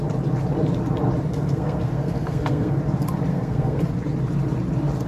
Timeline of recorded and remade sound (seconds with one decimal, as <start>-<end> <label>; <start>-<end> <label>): 0.0-1.3 recorded; 1.3-2.8 remade; 2.8-3.3 recorded; 3.3-3.8 remade; 3.8-5.1 recorded